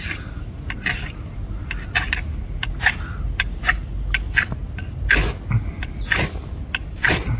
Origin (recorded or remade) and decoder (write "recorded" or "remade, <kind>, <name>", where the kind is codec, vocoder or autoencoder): recorded